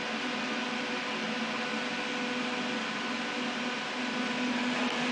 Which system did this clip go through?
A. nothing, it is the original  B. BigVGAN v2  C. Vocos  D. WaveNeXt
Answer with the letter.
A